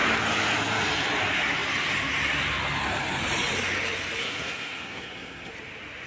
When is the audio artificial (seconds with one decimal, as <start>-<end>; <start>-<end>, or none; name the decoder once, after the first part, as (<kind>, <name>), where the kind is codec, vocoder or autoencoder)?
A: 4.2-5.5 (codec, SNAC)